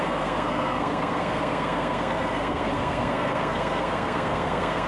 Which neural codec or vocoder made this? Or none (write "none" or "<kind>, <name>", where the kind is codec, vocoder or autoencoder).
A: codec, SNAC